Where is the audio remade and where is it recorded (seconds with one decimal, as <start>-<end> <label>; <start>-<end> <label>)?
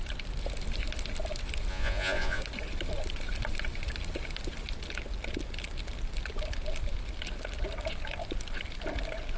0.0-1.7 recorded; 1.7-2.4 remade; 2.4-9.4 recorded